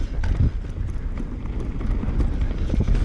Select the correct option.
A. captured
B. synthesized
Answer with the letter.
A